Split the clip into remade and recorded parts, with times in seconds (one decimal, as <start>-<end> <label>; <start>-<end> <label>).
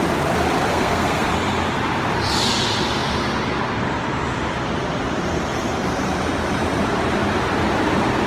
0.0-0.7 recorded; 0.7-1.3 remade; 1.3-8.3 recorded